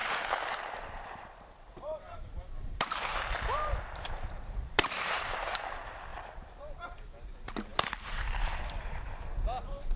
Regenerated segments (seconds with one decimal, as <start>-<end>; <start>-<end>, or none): 0.8-6.1; 6.6-10.0